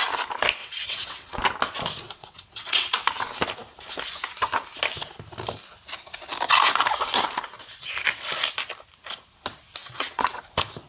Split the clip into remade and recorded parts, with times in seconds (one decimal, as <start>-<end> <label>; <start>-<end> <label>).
0.0-0.6 recorded; 0.6-1.4 remade; 1.4-2.2 recorded; 2.2-3.0 remade; 3.0-9.8 recorded; 9.8-10.4 remade; 10.4-10.9 recorded